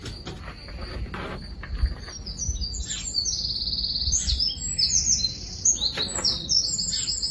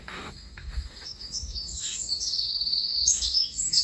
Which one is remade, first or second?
second